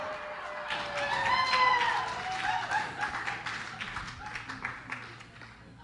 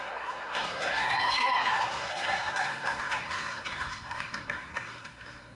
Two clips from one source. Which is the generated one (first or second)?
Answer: second